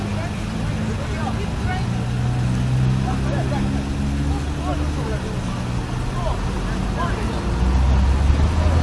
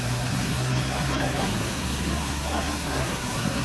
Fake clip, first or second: second